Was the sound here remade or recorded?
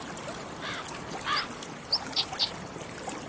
recorded